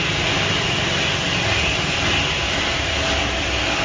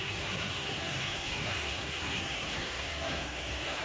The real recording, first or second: first